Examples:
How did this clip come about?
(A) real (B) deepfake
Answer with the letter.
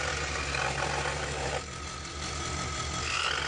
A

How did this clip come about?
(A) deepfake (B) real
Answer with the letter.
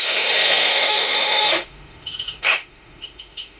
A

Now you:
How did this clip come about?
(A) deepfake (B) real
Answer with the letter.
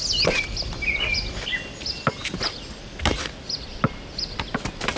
B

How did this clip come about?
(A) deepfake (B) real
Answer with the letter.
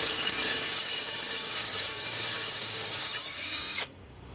A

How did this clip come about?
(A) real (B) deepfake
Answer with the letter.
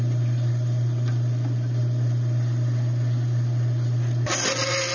A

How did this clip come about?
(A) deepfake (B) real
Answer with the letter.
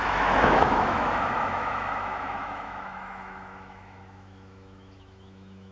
A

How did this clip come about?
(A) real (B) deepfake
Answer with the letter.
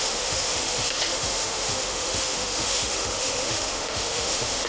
B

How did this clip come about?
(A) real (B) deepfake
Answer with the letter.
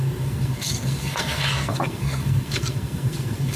B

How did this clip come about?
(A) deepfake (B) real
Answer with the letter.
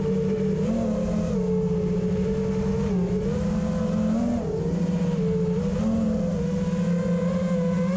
B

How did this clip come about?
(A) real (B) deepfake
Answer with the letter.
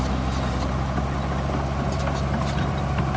A